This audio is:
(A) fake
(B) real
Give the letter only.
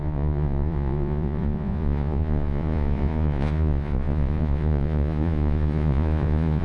A